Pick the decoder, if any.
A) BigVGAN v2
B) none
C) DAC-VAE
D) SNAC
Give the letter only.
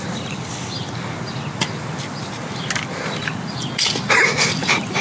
B